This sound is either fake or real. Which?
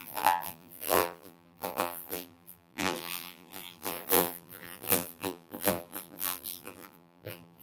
fake